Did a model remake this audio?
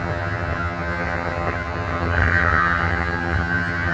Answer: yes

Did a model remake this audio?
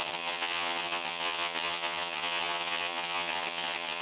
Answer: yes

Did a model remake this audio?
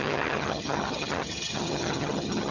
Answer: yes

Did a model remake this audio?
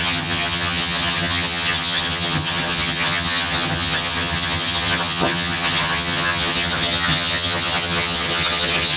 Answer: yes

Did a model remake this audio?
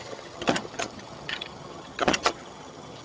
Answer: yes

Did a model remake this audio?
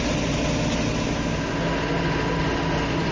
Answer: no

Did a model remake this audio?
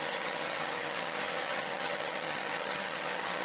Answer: yes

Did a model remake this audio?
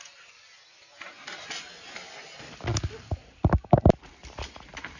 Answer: no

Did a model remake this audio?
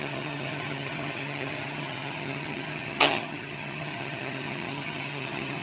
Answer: yes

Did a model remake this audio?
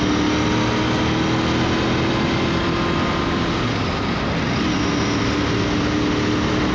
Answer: no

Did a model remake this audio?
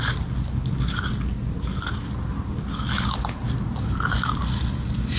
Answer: no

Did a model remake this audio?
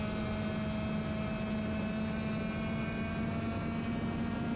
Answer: no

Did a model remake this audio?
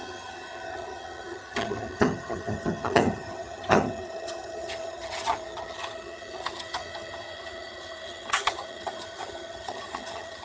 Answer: yes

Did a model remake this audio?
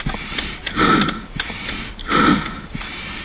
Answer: no